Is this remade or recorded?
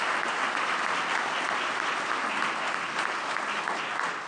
recorded